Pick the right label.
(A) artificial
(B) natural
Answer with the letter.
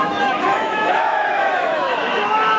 A